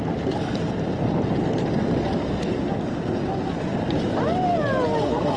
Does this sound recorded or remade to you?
recorded